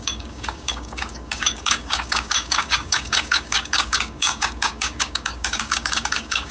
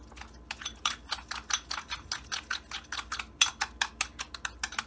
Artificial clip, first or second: first